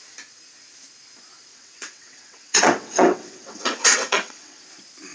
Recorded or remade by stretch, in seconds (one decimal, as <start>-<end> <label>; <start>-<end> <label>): 0.0-1.5 recorded; 1.5-4.6 remade; 4.6-5.1 recorded